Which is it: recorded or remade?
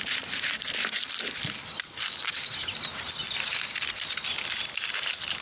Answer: recorded